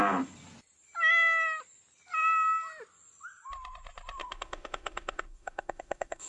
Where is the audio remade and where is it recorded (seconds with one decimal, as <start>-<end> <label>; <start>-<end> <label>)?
0.0-4.2 recorded; 4.2-6.3 remade